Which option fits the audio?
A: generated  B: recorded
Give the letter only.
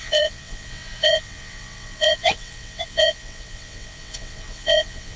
A